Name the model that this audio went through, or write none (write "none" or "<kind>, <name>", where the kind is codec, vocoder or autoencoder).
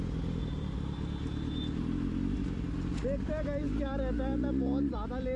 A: none